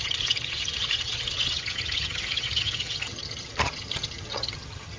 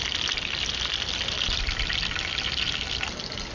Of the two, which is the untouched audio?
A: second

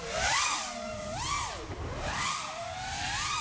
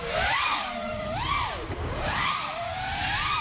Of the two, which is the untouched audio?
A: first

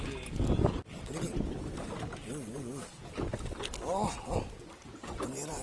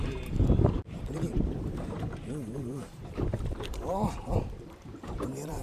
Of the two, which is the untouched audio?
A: first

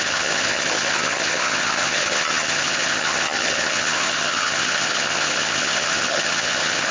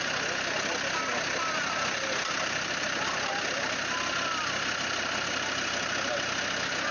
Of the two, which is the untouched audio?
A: second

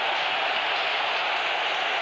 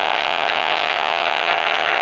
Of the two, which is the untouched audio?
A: first